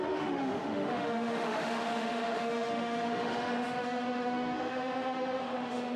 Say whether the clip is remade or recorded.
remade